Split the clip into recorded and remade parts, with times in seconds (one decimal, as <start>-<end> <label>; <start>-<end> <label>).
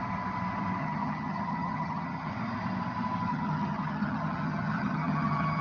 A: 0.0-0.8 recorded; 0.8-2.3 remade; 2.3-3.3 recorded; 3.3-5.6 remade